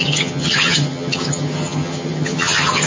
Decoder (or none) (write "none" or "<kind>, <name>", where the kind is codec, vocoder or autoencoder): vocoder, HiFi-GAN